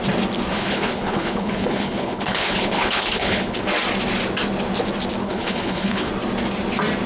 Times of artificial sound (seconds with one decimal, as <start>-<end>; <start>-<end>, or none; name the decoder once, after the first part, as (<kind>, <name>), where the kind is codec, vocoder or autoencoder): 0.5-3.6 (codec, HILCodec); 5.2-6.1